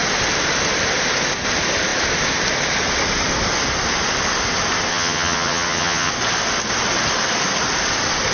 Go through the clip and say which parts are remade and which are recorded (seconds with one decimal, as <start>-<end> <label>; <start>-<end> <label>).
0.0-4.9 recorded; 4.9-6.1 remade; 6.1-8.3 recorded